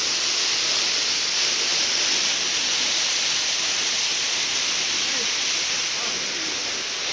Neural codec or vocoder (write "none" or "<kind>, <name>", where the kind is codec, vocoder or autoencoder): none